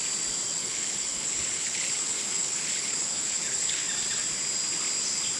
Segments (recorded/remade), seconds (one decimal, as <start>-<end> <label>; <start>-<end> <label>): 0.0-0.6 recorded; 0.6-3.8 remade; 3.8-5.4 recorded